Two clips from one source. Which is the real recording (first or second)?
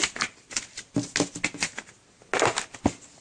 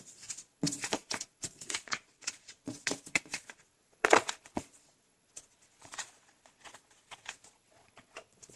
first